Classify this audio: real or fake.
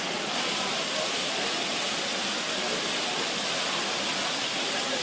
real